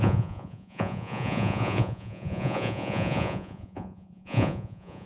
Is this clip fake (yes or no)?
yes